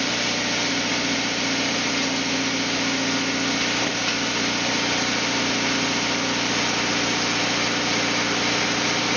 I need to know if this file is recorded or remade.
recorded